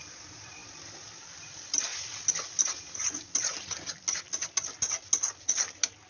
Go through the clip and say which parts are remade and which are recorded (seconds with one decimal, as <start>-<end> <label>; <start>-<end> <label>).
0.0-6.1 recorded